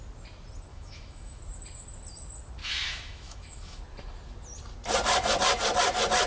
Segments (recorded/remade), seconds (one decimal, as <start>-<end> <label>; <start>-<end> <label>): 0.0-0.7 recorded; 0.7-1.4 remade; 1.4-2.6 recorded; 2.6-3.8 remade; 3.8-6.3 recorded

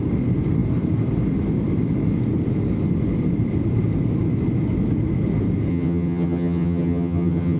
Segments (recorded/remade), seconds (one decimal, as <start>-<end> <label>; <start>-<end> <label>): 0.0-5.7 recorded; 5.7-7.6 remade

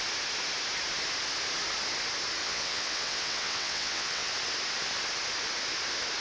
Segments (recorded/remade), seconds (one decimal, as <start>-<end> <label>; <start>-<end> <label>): 0.0-2.4 recorded; 2.4-4.3 remade; 4.3-6.2 recorded

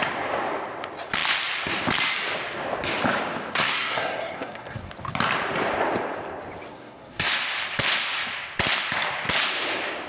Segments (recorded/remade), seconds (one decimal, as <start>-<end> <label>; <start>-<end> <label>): 0.0-3.5 recorded; 3.5-4.9 remade; 4.9-6.7 recorded; 6.7-7.3 remade; 7.3-10.1 recorded

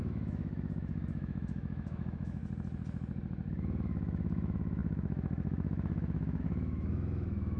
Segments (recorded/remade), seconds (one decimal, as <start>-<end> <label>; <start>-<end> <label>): 0.0-2.4 remade; 2.4-3.5 recorded; 3.5-7.6 remade

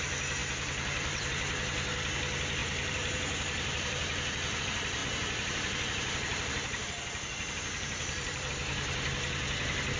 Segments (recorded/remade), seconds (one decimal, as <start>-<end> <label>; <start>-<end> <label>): 0.0-0.4 recorded; 0.4-1.3 remade; 1.3-2.6 recorded; 2.6-4.6 remade; 4.6-5.0 recorded; 5.0-8.5 remade; 8.5-10.0 recorded

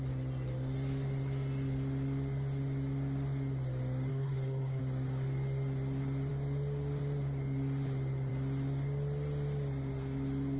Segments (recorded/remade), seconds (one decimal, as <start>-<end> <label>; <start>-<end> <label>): 0.0-4.1 recorded; 4.1-4.8 remade; 4.8-10.6 recorded